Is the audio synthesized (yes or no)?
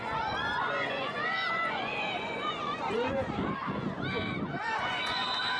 yes